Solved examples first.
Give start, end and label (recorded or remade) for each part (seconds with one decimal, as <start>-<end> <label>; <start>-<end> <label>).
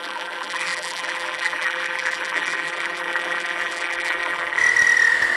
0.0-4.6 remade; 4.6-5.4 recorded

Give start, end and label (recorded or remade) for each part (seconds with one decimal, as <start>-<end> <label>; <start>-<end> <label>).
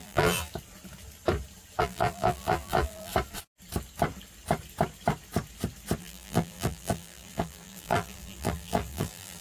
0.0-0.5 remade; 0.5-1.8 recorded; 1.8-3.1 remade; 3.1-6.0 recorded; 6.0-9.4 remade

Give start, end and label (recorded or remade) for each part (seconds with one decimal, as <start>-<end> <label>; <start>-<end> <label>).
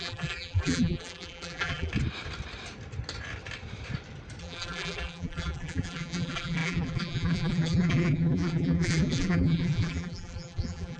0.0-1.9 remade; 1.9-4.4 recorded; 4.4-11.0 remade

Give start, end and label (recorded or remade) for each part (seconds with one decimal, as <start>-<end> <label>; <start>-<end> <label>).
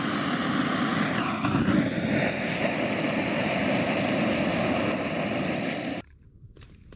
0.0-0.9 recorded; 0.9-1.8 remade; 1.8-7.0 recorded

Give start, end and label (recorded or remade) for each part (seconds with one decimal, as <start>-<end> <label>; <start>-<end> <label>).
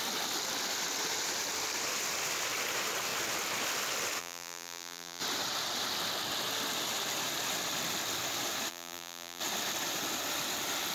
0.0-4.2 recorded; 4.2-5.2 remade; 5.2-8.7 recorded; 8.7-9.4 remade; 9.4-10.9 recorded